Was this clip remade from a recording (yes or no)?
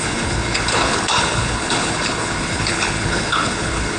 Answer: yes